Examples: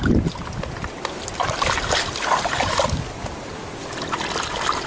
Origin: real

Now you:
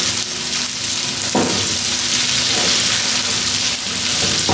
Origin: real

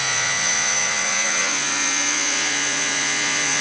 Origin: fake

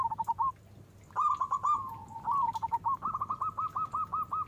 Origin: real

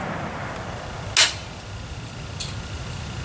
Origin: real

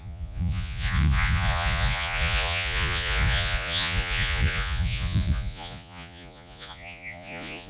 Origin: fake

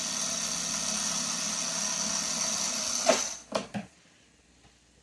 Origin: real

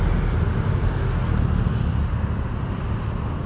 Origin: real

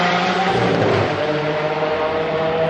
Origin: fake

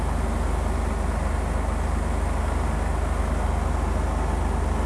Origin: real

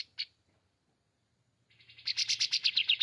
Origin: real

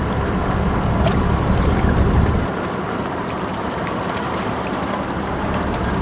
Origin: fake